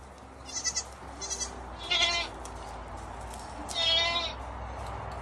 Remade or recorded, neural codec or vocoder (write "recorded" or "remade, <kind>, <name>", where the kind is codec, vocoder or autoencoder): recorded